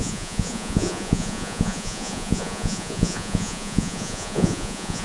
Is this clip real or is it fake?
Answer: fake